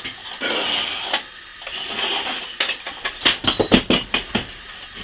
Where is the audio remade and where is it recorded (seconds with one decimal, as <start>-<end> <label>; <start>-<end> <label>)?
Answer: 0.0-5.0 recorded